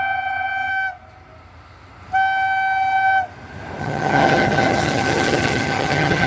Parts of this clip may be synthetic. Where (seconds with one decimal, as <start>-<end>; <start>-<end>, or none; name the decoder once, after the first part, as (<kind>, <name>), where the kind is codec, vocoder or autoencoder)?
0.0-0.7 (vocoder, HiFi-GAN); 3.8-6.3